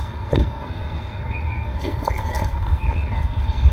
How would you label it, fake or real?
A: fake